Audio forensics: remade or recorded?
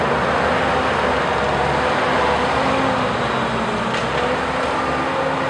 recorded